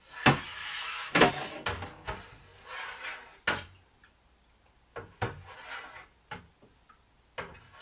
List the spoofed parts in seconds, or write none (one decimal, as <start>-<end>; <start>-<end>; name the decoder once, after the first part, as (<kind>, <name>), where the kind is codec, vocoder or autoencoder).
0.6-1.3 (autoencoder, DAC-VAE)